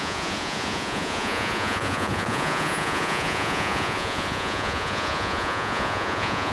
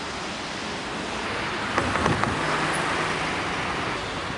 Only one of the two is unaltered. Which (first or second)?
second